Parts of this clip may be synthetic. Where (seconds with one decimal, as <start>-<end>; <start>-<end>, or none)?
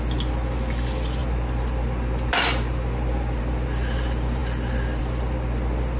none